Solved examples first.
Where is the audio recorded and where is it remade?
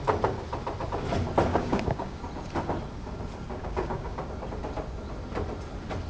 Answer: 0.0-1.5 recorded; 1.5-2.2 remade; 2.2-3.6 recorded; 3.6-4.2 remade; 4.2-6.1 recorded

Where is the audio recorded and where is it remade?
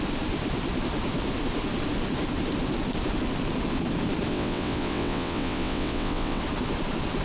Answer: 0.0-4.3 recorded; 4.3-6.4 remade; 6.4-7.2 recorded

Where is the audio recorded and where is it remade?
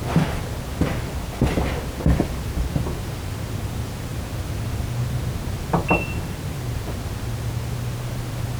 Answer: 0.0-8.6 recorded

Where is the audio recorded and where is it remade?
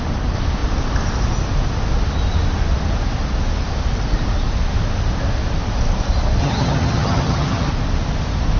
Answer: 0.0-6.4 recorded; 6.4-7.7 remade; 7.7-8.6 recorded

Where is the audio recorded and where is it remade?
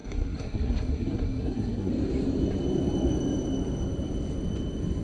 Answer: 0.0-1.9 remade; 1.9-5.0 recorded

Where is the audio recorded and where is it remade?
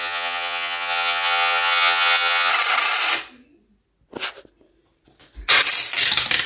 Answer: 0.0-2.5 remade; 2.5-6.5 recorded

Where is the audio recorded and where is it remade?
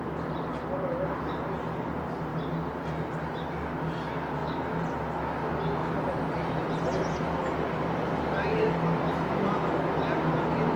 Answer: 0.0-4.4 recorded; 4.4-4.9 remade; 4.9-10.8 recorded